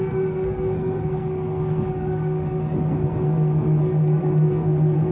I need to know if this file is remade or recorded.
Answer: remade